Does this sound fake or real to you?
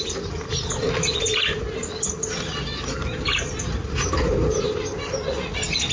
real